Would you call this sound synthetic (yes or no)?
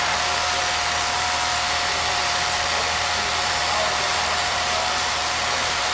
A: yes